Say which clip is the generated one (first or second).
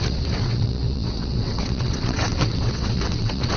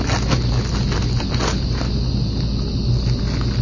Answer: first